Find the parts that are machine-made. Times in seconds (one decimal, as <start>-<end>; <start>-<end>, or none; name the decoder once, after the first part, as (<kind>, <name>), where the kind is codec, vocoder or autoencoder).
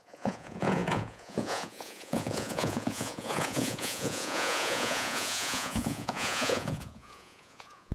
0.0-7.9 (vocoder, Vocos)